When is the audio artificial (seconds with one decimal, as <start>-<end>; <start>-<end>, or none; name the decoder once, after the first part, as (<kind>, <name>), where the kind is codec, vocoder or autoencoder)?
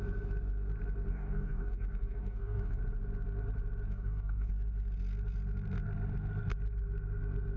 1.1-2.8 (codec, DAC); 3.9-4.5